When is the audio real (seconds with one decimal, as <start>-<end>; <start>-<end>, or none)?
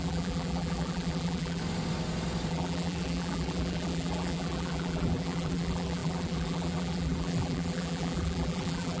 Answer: 1.6-2.5